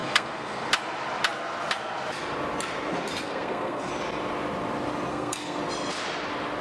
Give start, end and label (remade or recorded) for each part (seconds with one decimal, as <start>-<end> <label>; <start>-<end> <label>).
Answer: 0.0-0.7 remade; 0.7-3.2 recorded; 3.2-3.9 remade; 3.9-5.1 recorded; 5.1-5.6 remade; 5.6-6.6 recorded